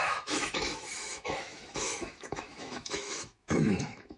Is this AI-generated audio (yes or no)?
yes